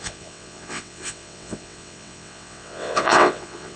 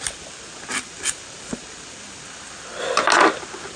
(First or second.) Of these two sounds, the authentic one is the second